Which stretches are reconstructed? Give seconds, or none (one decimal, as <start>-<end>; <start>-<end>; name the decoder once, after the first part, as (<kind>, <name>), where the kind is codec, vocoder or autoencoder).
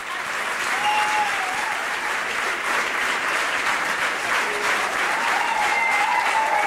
1.8-5.8 (vocoder, BigVGAN v2)